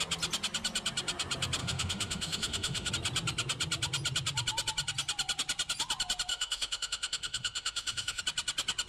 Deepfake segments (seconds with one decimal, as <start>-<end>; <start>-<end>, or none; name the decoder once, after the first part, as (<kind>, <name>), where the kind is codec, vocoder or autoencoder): 1.6-2.9 (autoencoder, DAC-VAE); 6.3-8.2